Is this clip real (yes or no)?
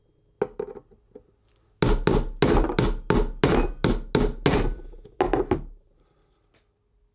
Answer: yes